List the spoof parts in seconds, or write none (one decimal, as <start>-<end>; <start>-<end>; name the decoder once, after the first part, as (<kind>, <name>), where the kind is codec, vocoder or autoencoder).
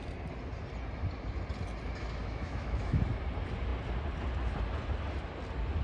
2.2-3.0 (autoencoder, DAC-VAE)